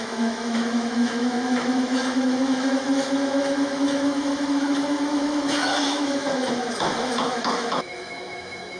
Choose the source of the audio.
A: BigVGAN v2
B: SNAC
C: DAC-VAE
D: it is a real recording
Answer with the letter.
C